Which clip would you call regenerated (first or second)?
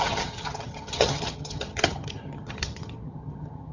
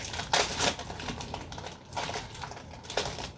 first